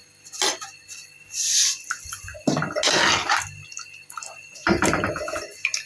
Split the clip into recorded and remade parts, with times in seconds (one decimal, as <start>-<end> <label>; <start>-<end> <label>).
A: 0.0-5.9 recorded